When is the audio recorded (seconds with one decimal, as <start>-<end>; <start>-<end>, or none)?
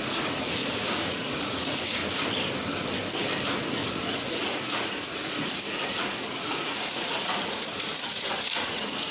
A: 0.6-1.1; 2.0-3.9